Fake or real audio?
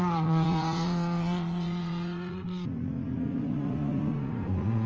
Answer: fake